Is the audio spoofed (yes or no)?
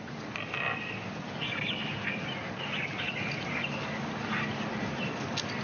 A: no